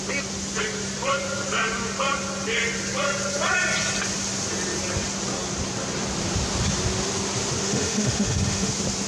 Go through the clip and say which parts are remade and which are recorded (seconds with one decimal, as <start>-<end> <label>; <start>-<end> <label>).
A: 0.0-7.6 recorded; 7.6-8.7 remade; 8.7-9.1 recorded